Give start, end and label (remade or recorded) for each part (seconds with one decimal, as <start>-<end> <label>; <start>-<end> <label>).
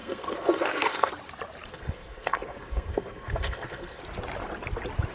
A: 0.0-1.1 remade; 1.1-1.7 recorded; 1.7-4.0 remade; 4.0-5.1 recorded